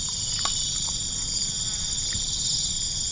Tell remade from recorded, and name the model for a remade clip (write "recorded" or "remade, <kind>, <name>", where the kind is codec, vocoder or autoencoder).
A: recorded